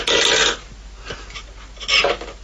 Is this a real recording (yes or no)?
yes